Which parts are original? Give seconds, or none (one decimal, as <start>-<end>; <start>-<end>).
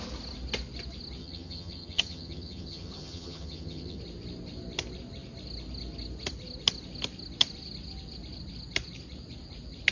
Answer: 0.0-1.2; 4.0-9.9